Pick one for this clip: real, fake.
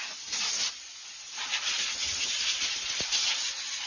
real